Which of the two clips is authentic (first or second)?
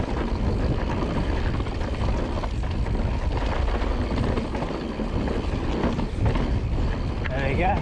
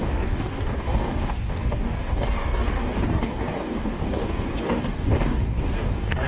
first